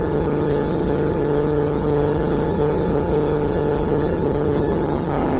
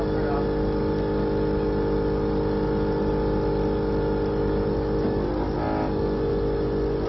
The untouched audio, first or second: second